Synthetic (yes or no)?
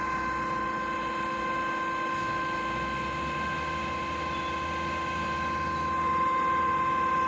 no